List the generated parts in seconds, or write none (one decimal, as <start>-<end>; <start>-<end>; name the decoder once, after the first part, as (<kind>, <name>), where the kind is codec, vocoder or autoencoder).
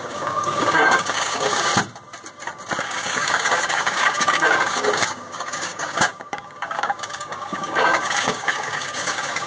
0.0-1.7 (codec, DAC); 2.8-9.5